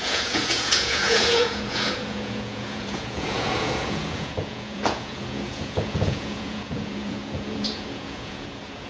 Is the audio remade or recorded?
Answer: remade